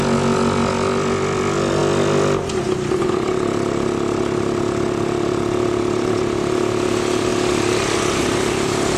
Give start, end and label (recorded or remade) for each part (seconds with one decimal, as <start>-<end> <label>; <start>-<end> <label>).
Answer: 0.0-9.0 recorded